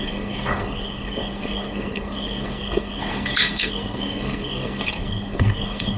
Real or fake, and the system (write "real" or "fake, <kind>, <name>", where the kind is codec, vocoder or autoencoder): fake, codec, SNAC